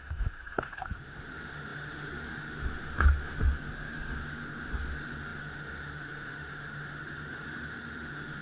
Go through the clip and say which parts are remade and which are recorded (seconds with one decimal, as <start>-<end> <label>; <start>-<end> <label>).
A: 0.0-8.4 remade